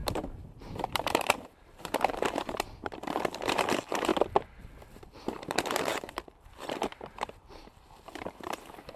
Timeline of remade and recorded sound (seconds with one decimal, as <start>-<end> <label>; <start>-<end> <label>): 0.0-4.1 remade; 4.1-5.2 recorded; 5.2-9.0 remade